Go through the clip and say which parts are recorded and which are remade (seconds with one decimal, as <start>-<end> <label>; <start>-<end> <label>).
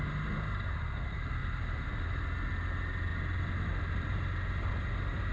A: 0.0-1.4 recorded; 1.4-2.0 remade; 2.0-5.3 recorded